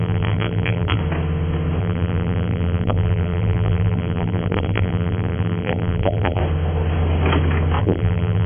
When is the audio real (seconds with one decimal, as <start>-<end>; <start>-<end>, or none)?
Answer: 1.0-1.8; 6.4-7.8

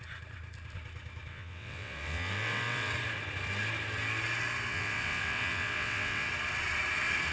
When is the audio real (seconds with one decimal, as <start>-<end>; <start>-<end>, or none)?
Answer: 0.0-1.3; 2.9-4.7; 6.3-7.3

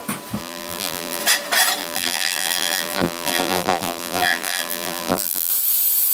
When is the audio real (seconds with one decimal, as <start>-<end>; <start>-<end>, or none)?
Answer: 0.0-0.4; 1.2-1.8; 5.5-6.1

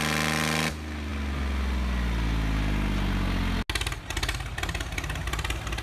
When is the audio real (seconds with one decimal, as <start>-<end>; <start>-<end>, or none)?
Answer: 0.0-5.8

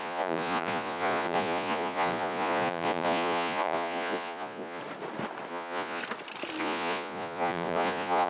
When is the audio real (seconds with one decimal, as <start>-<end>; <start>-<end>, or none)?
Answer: 4.8-5.5; 6.0-6.6

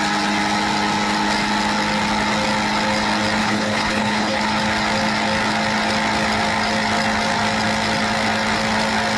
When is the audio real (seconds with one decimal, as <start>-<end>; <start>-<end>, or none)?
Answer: 0.0-3.4; 4.4-9.2

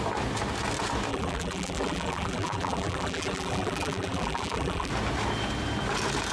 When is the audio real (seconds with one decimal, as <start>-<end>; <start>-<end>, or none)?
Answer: 0.0-1.1; 4.9-6.3

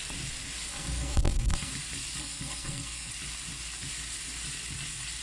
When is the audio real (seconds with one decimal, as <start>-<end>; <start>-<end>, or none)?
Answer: 0.0-0.7; 1.7-2.2; 3.1-5.2